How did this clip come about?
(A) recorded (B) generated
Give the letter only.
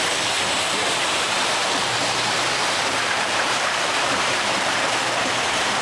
B